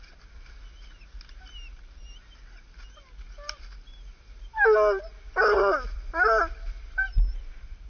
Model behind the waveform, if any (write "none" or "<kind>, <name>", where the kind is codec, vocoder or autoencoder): none